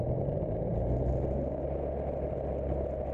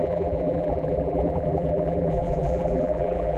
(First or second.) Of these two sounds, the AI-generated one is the second